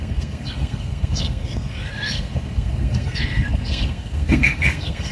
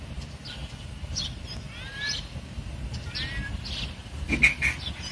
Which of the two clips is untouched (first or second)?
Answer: second